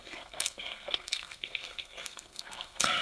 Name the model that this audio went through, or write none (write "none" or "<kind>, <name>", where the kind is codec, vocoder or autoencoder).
codec, SNAC